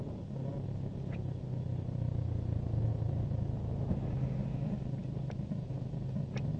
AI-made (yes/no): no